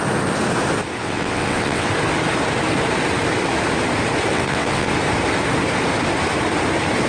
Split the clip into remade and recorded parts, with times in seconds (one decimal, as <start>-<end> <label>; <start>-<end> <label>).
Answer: 0.0-1.0 recorded; 1.0-1.9 remade; 1.9-4.3 recorded; 4.3-4.9 remade; 4.9-7.1 recorded

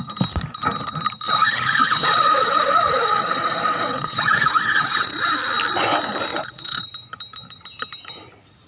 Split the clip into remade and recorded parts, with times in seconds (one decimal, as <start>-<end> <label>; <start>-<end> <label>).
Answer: 0.0-1.8 recorded; 1.8-5.3 remade; 5.3-6.3 recorded; 6.3-6.8 remade; 6.8-8.7 recorded

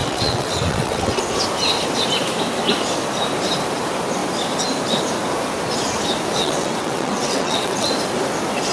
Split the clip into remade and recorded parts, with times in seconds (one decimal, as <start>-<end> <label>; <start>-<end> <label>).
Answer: 0.0-1.2 remade; 1.2-6.4 recorded; 6.4-7.9 remade; 7.9-8.7 recorded

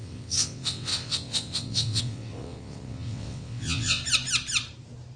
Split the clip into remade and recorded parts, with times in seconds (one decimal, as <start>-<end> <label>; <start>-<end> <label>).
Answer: 0.0-4.0 remade; 4.0-5.2 recorded

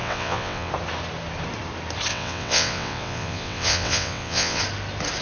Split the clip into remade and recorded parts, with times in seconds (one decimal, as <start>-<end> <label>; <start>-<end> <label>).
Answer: 0.0-0.7 remade; 0.7-2.1 recorded; 2.1-4.6 remade; 4.6-5.2 recorded

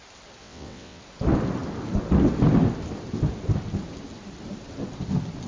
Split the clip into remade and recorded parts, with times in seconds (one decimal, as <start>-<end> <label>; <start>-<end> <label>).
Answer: 0.0-0.4 recorded; 0.4-1.0 remade; 1.0-5.5 recorded